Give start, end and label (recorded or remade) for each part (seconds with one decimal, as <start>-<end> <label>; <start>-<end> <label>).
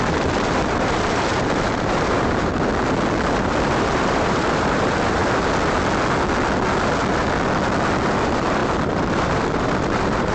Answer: 0.0-2.7 remade; 2.7-3.3 recorded; 3.3-5.2 remade; 5.2-8.0 recorded; 8.0-10.3 remade